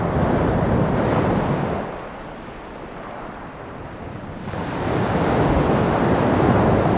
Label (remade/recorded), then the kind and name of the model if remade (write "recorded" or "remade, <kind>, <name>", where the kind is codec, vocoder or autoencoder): recorded